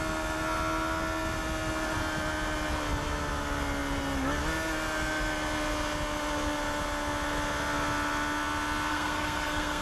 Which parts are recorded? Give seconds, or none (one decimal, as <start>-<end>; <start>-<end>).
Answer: 0.0-8.9

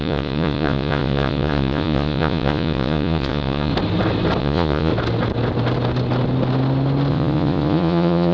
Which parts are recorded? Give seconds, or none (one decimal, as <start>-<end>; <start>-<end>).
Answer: 3.7-4.4; 4.9-7.1

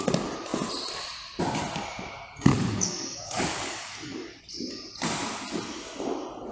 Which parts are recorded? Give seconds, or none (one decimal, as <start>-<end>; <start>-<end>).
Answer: 0.0-2.5; 4.4-6.5

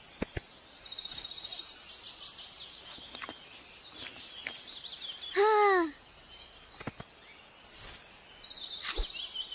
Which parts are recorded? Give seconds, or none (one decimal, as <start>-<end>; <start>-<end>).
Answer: 0.0-9.5

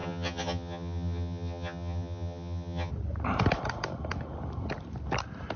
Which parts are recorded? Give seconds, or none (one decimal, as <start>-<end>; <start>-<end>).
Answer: 2.9-5.6

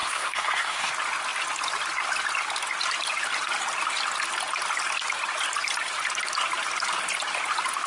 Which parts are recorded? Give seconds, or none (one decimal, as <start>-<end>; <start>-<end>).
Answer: 0.9-7.9

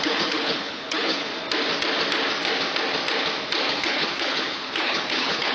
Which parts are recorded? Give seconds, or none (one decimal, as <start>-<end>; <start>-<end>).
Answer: 1.3-3.7